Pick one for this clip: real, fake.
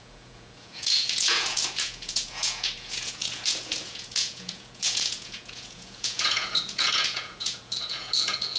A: fake